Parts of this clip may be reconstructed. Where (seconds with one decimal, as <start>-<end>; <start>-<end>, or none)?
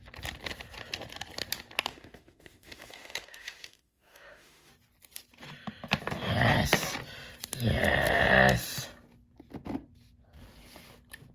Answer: 1.9-4.7